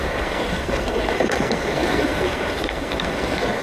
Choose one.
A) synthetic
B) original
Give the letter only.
A